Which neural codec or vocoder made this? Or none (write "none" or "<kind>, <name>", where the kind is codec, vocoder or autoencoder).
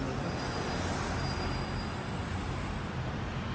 none